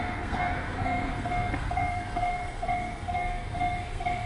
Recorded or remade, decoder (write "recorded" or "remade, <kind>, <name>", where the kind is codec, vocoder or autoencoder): remade, codec, SNAC